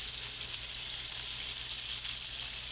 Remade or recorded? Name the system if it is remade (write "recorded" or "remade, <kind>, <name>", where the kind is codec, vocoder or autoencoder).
recorded